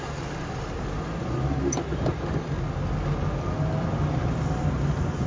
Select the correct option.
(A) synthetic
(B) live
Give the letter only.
B